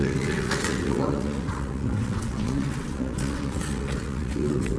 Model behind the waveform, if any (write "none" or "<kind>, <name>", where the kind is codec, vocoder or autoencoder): vocoder, WaveNeXt